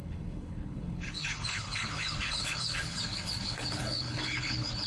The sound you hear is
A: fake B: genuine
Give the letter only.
A